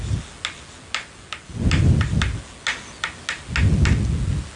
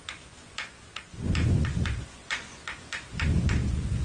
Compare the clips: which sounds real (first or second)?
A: first